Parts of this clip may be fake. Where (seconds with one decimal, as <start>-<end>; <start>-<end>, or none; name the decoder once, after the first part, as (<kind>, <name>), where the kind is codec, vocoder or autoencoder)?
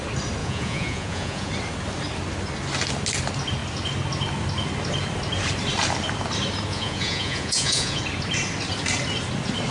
0.4-1.5 (vocoder, Vocos); 6.7-8.0